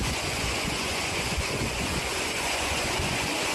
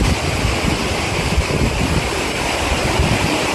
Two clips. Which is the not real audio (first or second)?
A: first